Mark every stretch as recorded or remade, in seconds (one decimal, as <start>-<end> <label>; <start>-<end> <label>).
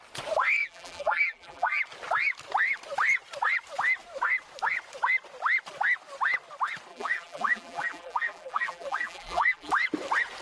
0.0-0.6 recorded; 0.6-1.8 remade; 1.8-6.9 recorded; 6.9-9.7 remade; 9.7-10.4 recorded